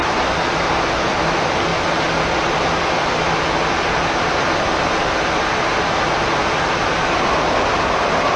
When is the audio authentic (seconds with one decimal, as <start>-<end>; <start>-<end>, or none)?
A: 0.0-8.4

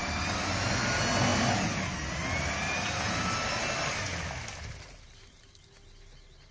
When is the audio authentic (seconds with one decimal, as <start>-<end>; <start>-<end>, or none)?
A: 0.0-6.5

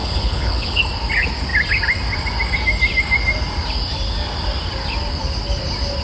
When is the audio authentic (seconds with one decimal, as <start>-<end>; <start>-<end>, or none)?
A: 0.8-6.0

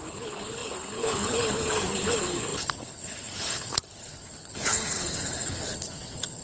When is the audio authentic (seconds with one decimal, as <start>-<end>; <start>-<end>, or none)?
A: none

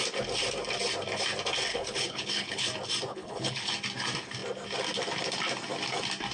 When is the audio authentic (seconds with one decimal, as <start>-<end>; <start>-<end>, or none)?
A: 0.0-1.7; 2.7-3.1; 3.7-6.3

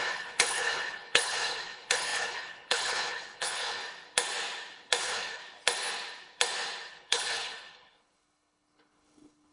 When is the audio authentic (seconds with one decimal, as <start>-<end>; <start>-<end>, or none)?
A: 3.8-5.0; 5.4-6.9